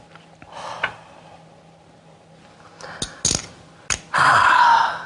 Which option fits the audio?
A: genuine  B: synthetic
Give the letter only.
A